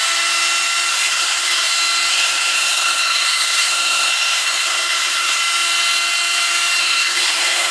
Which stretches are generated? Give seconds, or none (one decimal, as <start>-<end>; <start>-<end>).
0.9-1.7; 2.1-5.4; 6.8-7.7